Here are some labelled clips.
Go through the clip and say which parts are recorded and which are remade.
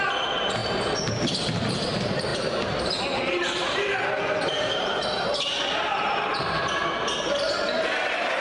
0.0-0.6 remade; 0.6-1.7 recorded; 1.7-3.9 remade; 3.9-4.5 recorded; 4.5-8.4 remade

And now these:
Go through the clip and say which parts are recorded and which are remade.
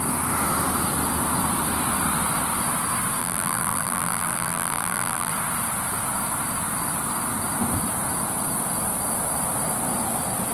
0.0-3.2 recorded; 3.2-5.3 remade; 5.3-10.5 recorded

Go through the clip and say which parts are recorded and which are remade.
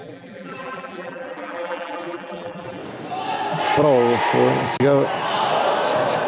0.0-2.8 remade; 2.8-6.3 recorded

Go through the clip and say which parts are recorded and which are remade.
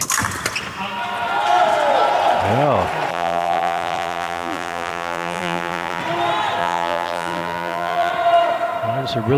0.0-3.1 recorded; 3.1-6.0 remade; 6.0-6.6 recorded; 6.6-8.1 remade; 8.1-9.4 recorded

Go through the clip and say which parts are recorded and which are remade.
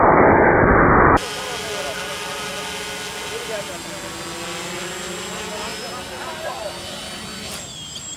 0.0-8.2 recorded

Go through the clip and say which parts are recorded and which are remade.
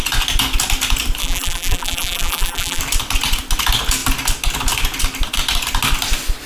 0.0-1.2 recorded; 1.2-2.8 remade; 2.8-6.5 recorded